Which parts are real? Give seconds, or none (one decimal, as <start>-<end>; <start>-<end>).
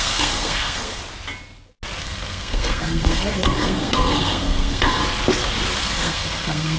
1.0-2.0; 5.0-5.8